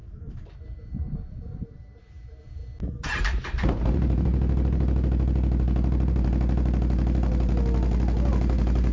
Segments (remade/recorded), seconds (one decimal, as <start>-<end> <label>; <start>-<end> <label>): 0.0-2.6 remade; 2.6-3.2 recorded; 3.2-4.3 remade; 4.3-8.3 recorded; 8.3-8.9 remade